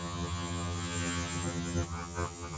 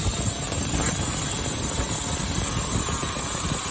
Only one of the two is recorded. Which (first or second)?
second